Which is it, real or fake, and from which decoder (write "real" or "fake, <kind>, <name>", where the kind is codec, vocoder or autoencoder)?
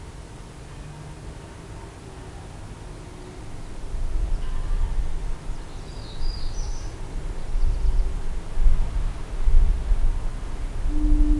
real